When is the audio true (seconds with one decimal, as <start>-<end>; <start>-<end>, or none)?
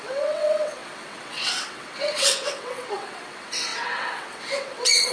none